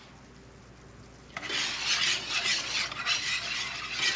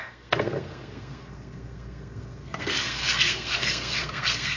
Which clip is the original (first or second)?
first